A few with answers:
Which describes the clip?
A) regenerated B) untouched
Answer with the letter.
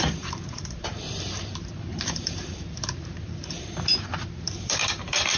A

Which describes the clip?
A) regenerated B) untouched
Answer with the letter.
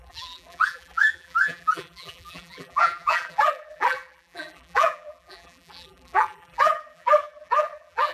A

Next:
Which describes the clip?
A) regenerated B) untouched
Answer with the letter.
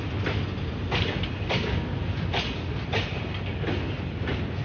B